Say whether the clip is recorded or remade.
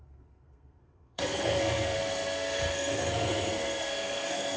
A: remade